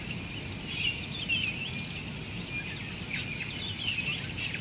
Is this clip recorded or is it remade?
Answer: recorded